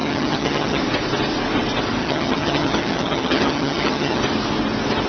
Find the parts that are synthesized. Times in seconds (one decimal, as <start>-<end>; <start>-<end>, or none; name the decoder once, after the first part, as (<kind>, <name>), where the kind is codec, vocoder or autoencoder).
0.0-0.8 (vocoder, HiFi-GAN); 2.0-4.2